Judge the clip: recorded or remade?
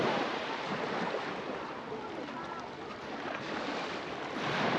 recorded